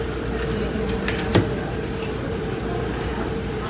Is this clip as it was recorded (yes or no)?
yes